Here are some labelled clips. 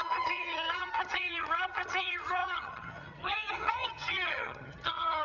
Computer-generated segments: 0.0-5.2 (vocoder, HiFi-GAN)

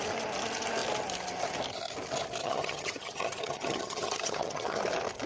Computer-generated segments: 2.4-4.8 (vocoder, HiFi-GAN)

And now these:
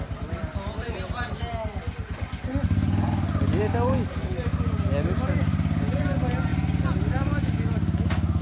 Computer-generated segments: none

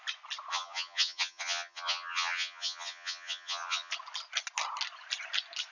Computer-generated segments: 0.5-3.9 (vocoder, HiFi-GAN)

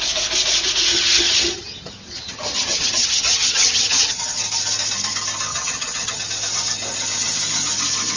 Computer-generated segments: 0.9-4.4 (vocoder, HiFi-GAN); 5.5-6.2

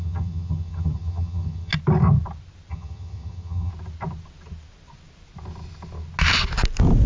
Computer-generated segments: 0.0-1.7 (vocoder, HiFi-GAN); 2.7-3.7

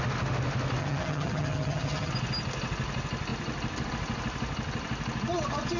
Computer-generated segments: 0.8-2.1 (vocoder, HiFi-GAN)

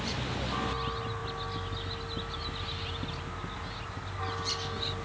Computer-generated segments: none